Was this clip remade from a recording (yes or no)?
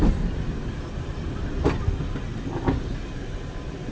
no